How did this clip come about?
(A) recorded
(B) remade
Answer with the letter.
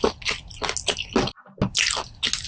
A